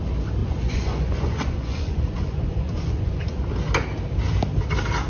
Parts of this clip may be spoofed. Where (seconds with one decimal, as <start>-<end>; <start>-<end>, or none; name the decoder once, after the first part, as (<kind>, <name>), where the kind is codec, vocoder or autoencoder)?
0.4-3.5 (vocoder, Vocos)